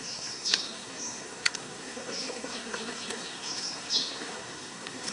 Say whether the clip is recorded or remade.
remade